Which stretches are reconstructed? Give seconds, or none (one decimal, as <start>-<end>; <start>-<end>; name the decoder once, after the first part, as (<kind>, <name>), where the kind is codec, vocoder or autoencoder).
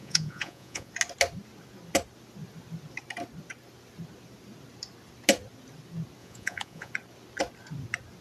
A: 0.0-0.9 (vocoder, Vocos); 6.2-6.9